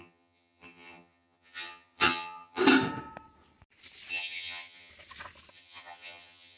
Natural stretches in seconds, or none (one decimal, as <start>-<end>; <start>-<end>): 2.6-4.1; 4.9-5.5